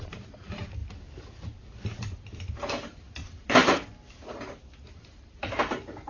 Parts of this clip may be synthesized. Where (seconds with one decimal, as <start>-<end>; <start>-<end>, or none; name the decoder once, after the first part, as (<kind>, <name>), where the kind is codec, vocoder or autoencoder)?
0.0-0.8 (vocoder, BigVGAN v2); 2.0-3.6; 4.3-6.1